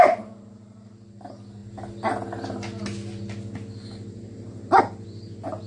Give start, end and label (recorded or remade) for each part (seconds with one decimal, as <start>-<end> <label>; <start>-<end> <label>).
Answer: 0.0-5.7 recorded